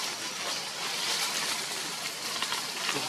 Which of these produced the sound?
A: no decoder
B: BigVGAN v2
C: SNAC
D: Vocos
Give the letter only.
A